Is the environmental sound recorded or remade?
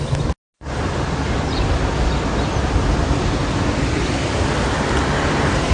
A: recorded